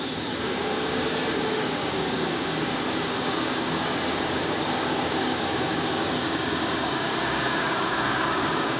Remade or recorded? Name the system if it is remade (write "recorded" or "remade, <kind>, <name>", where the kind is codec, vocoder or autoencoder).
remade, codec, DAC